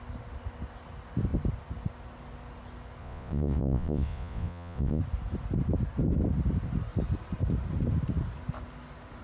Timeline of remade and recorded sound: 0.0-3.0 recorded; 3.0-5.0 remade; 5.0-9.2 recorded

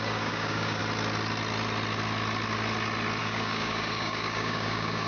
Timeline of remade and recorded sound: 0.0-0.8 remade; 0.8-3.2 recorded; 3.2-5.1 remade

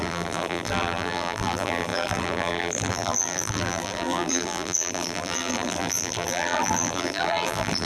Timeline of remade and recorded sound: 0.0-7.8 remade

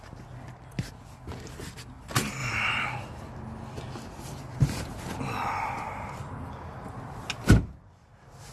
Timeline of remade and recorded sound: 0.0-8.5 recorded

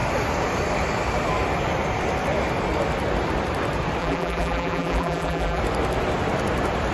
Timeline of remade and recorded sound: 0.0-4.0 recorded; 4.0-5.6 remade; 5.6-6.9 recorded

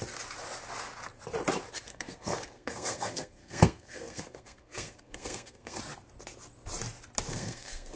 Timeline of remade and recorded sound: 0.0-1.9 recorded; 1.9-5.8 remade; 5.8-7.3 recorded; 7.3-8.0 remade